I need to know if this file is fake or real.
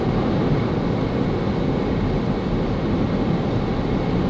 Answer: real